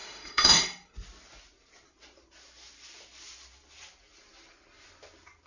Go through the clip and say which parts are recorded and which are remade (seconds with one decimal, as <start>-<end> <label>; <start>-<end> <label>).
0.0-0.6 remade; 0.6-5.5 recorded

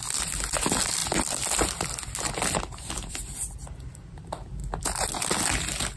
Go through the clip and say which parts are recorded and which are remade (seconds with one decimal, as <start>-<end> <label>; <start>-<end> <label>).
0.0-6.0 recorded

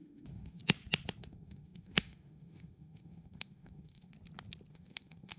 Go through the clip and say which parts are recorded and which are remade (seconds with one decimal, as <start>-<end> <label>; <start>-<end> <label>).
0.0-0.6 remade; 0.6-1.2 recorded; 1.2-4.1 remade; 4.1-4.7 recorded; 4.7-5.4 remade